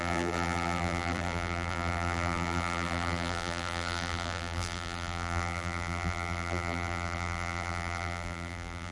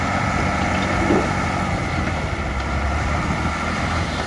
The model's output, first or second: first